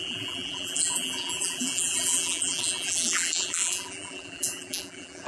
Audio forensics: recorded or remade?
remade